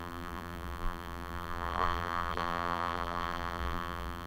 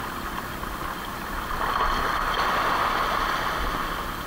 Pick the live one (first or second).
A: second